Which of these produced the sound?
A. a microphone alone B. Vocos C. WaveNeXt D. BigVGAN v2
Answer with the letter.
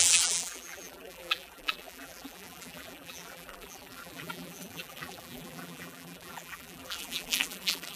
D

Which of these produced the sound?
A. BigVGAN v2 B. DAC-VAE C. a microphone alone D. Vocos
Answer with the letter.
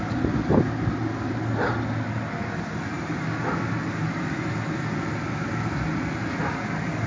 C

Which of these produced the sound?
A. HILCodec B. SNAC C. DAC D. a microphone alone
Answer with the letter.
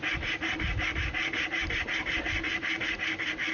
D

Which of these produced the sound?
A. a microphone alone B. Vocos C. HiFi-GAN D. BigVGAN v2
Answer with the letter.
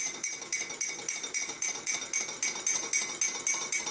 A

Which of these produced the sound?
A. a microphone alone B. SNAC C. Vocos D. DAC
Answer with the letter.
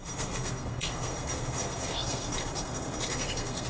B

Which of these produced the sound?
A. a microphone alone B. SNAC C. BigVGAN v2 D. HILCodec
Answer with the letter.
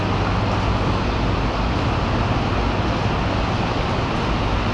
A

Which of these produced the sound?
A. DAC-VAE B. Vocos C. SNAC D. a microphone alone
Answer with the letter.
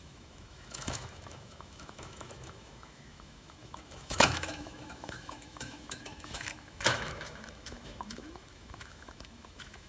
A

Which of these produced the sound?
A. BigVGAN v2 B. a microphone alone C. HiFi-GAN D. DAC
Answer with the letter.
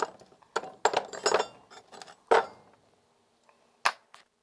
B